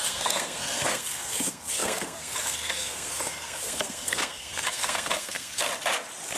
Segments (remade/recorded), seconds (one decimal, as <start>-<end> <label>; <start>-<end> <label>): 0.0-5.7 remade; 5.7-6.4 recorded